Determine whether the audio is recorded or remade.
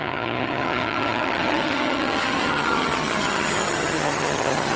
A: remade